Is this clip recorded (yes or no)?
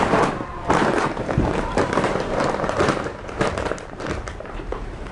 no